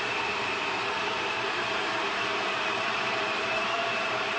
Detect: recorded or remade remade